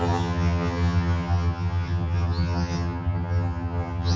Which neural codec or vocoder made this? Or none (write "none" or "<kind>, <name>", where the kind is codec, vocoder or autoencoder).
vocoder, HiFi-GAN